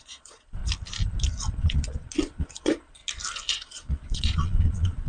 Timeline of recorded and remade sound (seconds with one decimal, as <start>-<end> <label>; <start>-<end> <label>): 0.0-0.6 remade; 0.6-1.6 recorded; 1.6-3.0 remade; 3.0-3.5 recorded; 3.5-5.1 remade